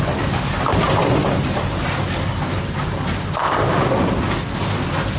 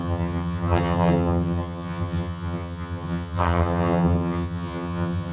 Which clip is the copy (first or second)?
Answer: second